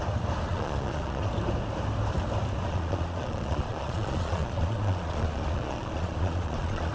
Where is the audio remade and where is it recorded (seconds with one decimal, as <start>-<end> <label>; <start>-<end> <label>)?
0.0-0.5 recorded; 0.5-1.3 remade; 1.3-2.6 recorded; 2.6-6.9 remade